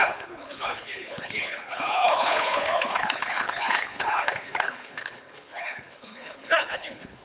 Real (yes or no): no